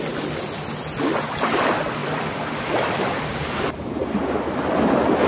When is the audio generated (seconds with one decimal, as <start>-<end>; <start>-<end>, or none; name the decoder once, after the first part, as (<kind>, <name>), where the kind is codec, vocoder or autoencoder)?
none